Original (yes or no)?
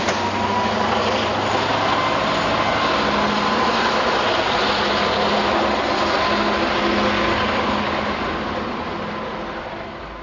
yes